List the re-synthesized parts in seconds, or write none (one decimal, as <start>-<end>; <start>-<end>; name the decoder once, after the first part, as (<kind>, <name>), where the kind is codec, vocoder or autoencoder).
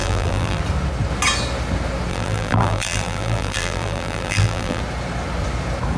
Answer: 0.0-0.6 (vocoder, BigVGAN v2); 2.1-4.8